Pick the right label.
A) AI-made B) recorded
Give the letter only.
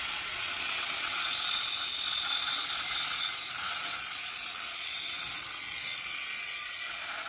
A